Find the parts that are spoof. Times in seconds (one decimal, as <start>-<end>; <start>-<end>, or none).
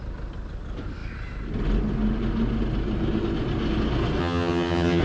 4.2-5.0